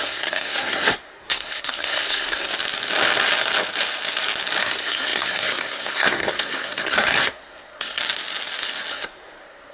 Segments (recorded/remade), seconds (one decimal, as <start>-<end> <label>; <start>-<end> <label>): 0.0-2.5 remade; 2.5-4.6 recorded; 4.6-8.0 remade; 8.0-8.9 recorded; 8.9-9.7 remade